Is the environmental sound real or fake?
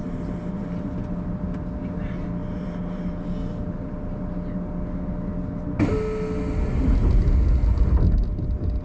real